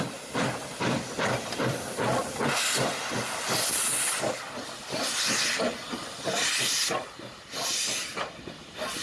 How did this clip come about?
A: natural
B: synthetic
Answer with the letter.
A